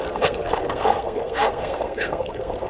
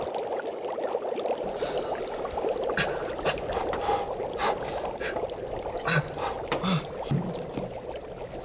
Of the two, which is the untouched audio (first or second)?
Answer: second